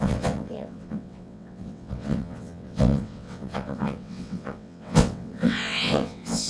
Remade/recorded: remade